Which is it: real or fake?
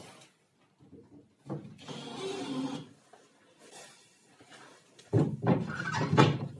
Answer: real